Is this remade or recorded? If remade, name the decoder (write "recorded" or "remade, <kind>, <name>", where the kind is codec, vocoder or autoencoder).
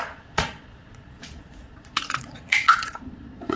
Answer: remade, vocoder, Vocos